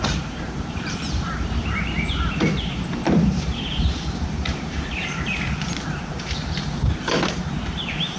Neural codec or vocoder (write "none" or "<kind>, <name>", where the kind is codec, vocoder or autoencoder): vocoder, BigVGAN v2